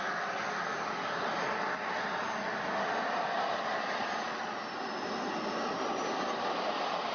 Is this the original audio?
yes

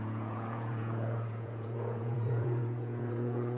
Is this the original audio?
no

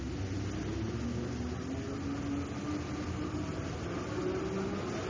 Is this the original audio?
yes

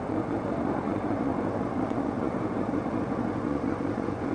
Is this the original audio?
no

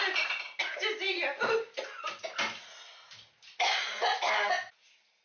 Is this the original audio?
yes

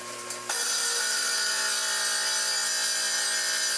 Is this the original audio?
yes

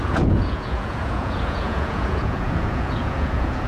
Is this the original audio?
no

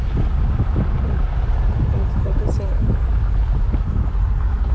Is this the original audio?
yes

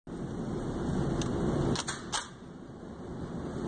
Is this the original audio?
yes